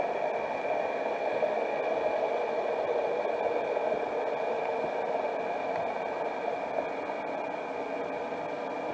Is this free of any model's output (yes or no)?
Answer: yes